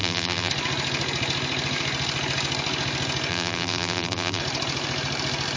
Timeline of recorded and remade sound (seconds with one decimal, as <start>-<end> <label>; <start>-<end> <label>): 0.0-0.5 remade; 0.5-3.3 recorded; 3.3-4.4 remade; 4.4-5.6 recorded